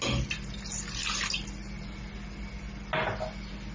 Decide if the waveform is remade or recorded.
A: recorded